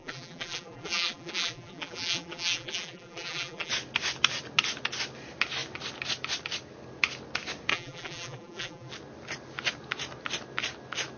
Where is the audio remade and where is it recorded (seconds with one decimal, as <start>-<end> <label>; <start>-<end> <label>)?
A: 0.0-3.7 remade; 3.7-7.7 recorded; 7.7-8.9 remade; 8.9-11.2 recorded